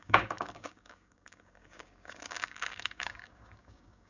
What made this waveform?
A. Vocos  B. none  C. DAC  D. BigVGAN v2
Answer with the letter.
C